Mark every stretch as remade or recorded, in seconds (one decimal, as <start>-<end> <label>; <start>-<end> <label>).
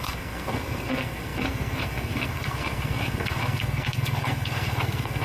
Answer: 0.0-5.2 remade